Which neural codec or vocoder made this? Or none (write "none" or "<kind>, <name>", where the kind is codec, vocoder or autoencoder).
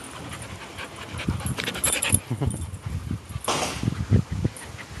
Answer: none